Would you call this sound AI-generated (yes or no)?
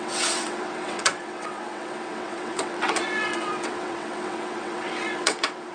yes